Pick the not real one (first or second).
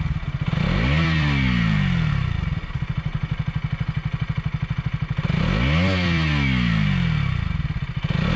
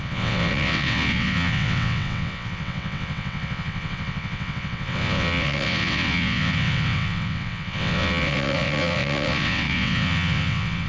second